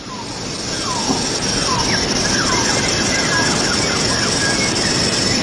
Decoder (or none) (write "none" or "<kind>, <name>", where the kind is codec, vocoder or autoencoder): none